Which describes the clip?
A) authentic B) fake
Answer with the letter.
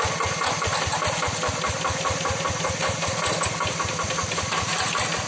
A